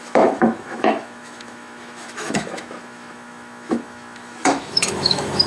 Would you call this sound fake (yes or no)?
yes